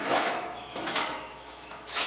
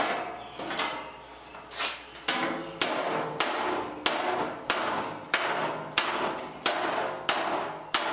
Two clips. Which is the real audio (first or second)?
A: second